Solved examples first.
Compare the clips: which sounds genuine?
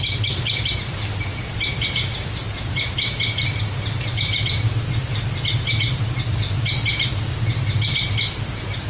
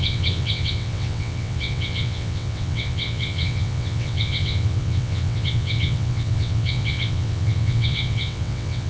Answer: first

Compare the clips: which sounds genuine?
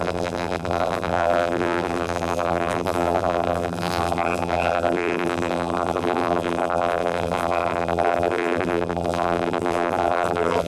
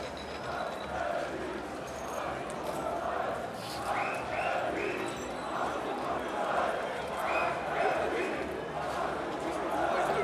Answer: second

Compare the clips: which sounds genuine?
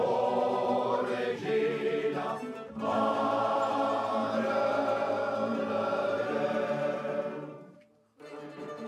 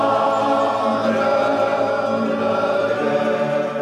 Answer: second